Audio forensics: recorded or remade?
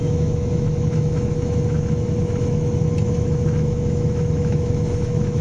remade